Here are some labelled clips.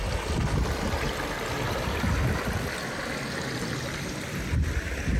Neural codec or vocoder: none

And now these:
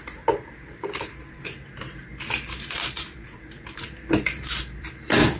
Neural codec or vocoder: vocoder, BigVGAN v2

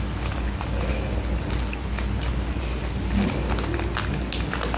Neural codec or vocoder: none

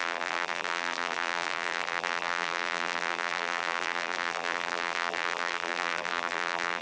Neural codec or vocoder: vocoder, BigVGAN v2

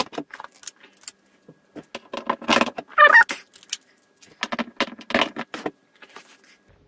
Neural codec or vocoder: none